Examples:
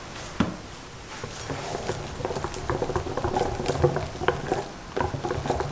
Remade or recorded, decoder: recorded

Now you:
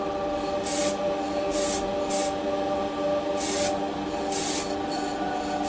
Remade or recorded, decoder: recorded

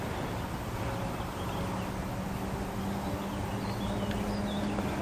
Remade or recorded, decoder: recorded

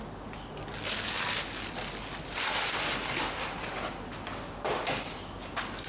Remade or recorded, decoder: recorded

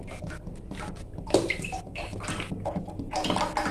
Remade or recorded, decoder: recorded